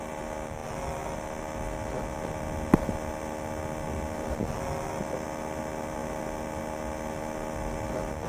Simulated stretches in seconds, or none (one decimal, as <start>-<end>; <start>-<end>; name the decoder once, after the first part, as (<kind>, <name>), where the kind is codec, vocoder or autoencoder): none